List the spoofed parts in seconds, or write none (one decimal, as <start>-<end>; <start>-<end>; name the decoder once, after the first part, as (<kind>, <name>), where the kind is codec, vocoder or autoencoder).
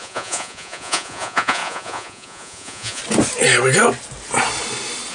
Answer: 0.0-3.0 (vocoder, Vocos)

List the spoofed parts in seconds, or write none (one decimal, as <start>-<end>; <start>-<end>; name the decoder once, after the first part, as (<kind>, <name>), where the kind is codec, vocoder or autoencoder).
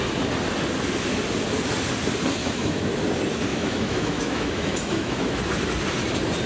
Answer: 2.4-2.9 (autoencoder, DAC-VAE); 3.5-5.4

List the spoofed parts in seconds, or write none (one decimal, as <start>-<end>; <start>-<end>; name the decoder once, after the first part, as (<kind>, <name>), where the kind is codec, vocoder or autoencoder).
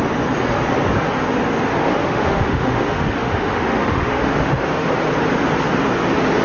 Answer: 1.8-4.9 (autoencoder, DAC-VAE)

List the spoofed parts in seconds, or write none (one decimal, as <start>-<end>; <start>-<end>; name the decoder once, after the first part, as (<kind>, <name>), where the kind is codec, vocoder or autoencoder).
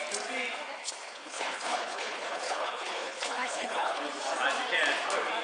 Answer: 0.8-4.0 (codec, HILCodec)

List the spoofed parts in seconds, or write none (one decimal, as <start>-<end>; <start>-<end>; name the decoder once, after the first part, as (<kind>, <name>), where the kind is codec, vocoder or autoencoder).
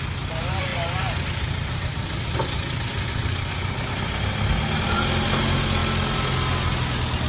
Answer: none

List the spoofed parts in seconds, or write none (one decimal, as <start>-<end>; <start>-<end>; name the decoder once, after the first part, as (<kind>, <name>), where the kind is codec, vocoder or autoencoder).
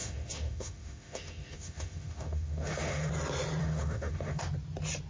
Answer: 0.0-3.1 (autoencoder, DAC-VAE); 3.6-4.4